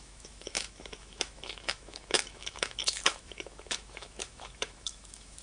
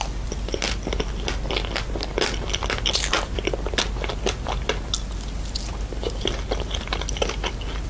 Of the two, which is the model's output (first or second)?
first